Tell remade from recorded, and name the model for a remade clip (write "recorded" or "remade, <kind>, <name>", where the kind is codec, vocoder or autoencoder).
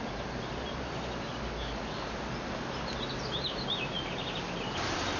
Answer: recorded